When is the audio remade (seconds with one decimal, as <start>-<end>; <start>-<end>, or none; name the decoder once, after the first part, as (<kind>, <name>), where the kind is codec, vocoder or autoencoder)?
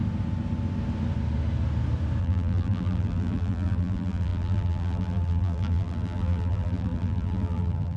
2.2-8.0 (vocoder, BigVGAN v2)